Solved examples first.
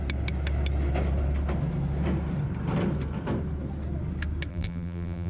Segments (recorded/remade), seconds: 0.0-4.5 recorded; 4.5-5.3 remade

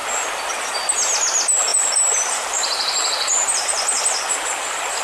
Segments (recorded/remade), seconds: 0.0-1.7 recorded; 1.7-4.0 remade; 4.0-5.0 recorded

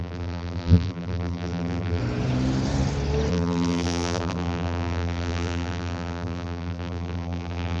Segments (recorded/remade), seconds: 0.0-2.0 remade; 2.0-3.3 recorded; 3.3-7.8 remade

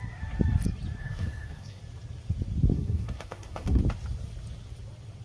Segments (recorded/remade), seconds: 0.0-1.0 recorded; 1.0-1.8 remade; 1.8-2.7 recorded; 2.7-3.8 remade; 3.8-5.2 recorded

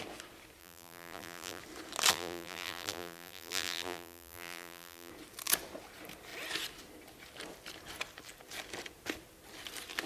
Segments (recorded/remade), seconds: 0.0-0.6 recorded; 0.6-1.6 remade; 1.6-2.1 recorded; 2.1-5.1 remade; 5.1-10.1 recorded

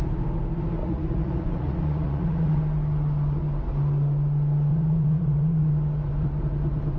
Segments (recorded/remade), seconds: 0.0-0.8 recorded; 0.8-2.6 remade; 2.6-4.7 recorded; 4.7-5.7 remade; 5.7-7.0 recorded

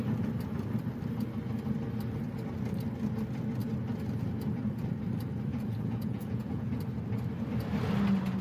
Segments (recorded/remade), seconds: 0.0-5.5 recorded; 5.5-6.8 remade; 6.8-8.4 recorded